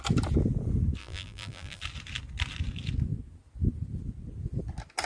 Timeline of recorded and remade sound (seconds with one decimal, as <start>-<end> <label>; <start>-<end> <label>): 0.0-1.0 recorded; 1.0-1.8 remade; 1.8-5.1 recorded